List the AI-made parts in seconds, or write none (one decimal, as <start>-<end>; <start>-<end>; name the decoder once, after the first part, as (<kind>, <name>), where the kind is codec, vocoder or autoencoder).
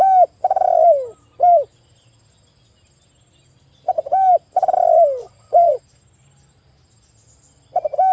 5.2-5.8 (vocoder, WaveNeXt)